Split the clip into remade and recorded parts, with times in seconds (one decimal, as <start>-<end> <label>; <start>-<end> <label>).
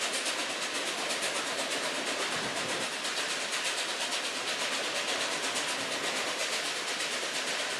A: 0.0-2.5 recorded; 2.5-4.1 remade; 4.1-7.8 recorded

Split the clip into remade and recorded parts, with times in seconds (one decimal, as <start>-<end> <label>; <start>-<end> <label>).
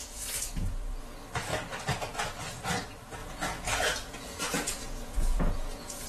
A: 0.0-1.0 remade; 1.0-3.2 recorded; 3.2-6.1 remade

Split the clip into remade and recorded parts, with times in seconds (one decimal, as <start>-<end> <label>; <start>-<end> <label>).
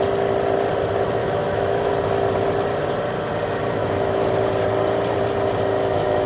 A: 0.0-1.2 recorded; 1.2-1.9 remade; 1.9-3.8 recorded; 3.8-4.3 remade; 4.3-5.7 recorded; 5.7-6.3 remade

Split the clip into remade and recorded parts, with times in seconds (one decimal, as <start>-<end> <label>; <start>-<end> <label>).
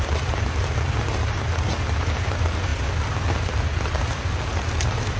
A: 0.0-5.2 recorded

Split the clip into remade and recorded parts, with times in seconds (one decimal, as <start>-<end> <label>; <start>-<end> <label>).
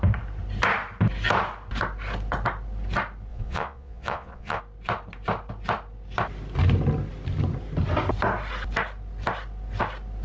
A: 0.0-3.3 recorded; 3.3-4.6 remade; 4.6-10.2 recorded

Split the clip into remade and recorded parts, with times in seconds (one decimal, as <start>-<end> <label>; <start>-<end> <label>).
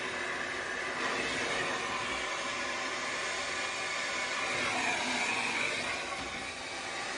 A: 0.0-5.2 recorded; 5.2-5.8 remade; 5.8-7.2 recorded